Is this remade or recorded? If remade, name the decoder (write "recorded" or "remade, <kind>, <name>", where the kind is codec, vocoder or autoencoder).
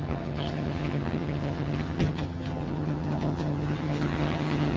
remade, vocoder, HiFi-GAN